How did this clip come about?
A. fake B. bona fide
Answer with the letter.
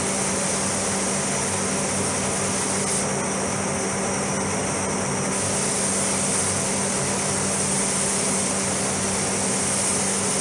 B